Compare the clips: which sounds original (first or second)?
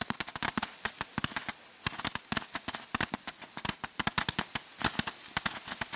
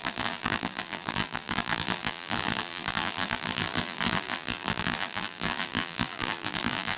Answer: first